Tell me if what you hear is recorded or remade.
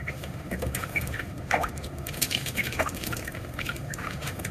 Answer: remade